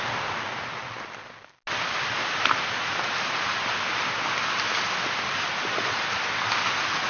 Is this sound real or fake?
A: real